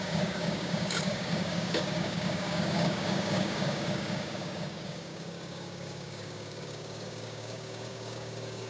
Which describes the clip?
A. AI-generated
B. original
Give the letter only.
A